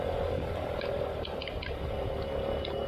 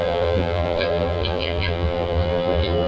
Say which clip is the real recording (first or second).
first